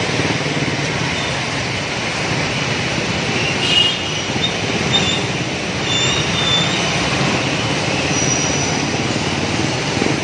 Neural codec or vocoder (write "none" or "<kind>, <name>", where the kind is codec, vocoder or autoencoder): none